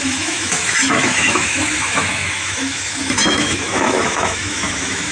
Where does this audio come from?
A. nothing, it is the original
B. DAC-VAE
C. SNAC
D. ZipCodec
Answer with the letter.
B